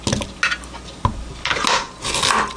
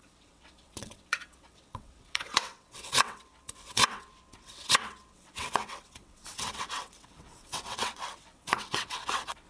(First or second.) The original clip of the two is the first